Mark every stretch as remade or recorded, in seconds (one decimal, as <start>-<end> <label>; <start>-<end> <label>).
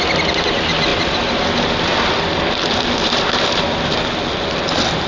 0.0-0.9 recorded; 0.9-4.0 remade; 4.0-5.1 recorded